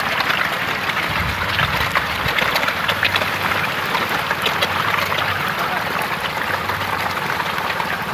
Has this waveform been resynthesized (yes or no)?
no